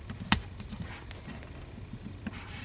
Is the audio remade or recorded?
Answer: recorded